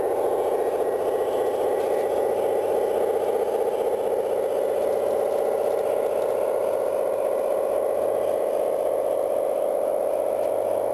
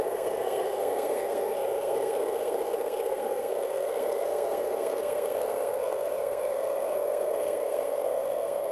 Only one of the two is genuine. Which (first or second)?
first